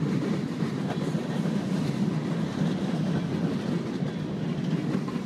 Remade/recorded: recorded